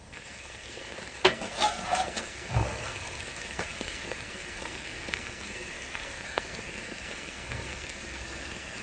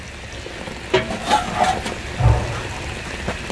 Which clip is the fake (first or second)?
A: first